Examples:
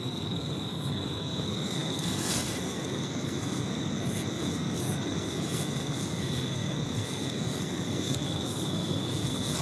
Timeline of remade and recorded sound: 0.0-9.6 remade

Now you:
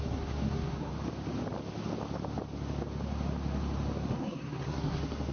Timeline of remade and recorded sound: 0.0-0.9 remade; 0.9-4.1 recorded; 4.1-5.3 remade